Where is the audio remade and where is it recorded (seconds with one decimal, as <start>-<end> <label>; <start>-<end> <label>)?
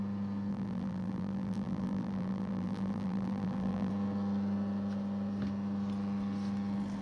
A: 0.0-0.5 recorded; 0.5-3.9 remade; 3.9-7.0 recorded